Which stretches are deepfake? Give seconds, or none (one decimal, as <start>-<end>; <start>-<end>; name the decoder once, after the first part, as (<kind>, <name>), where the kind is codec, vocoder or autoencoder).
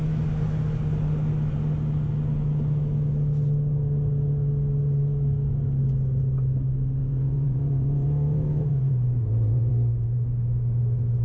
7.0-9.7 (vocoder, Vocos)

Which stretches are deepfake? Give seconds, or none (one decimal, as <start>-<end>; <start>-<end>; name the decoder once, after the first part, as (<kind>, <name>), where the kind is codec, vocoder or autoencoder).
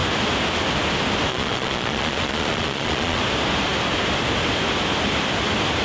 1.3-3.2 (vocoder, Vocos)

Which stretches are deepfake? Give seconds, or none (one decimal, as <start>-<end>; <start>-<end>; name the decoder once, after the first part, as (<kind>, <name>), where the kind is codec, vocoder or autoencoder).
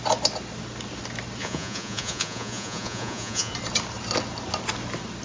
1.4-3.5 (vocoder, Vocos)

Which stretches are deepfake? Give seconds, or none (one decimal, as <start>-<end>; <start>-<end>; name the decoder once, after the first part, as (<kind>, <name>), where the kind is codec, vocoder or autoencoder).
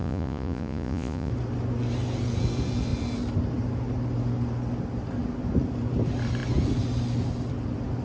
0.0-1.3 (vocoder, Vocos)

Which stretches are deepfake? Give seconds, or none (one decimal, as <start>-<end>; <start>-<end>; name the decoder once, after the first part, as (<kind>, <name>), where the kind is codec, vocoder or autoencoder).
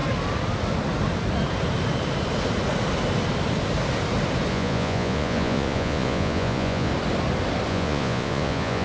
4.5-6.9 (vocoder, Vocos); 7.7-8.8